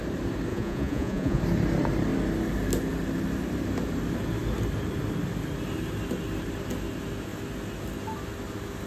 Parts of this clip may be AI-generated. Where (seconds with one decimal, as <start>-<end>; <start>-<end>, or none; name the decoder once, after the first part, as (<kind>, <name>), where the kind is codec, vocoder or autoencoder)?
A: 0.5-1.4 (vocoder, Vocos)